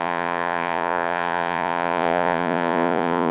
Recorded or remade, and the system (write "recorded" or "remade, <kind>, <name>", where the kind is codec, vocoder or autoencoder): remade, vocoder, Vocos